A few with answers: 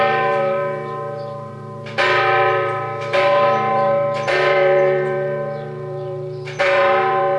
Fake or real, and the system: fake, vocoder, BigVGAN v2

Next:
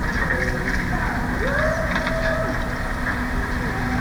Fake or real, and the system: real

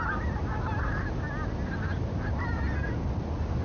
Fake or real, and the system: real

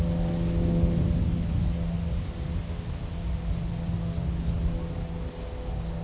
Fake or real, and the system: real